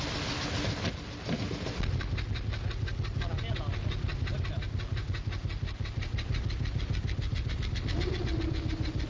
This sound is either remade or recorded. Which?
recorded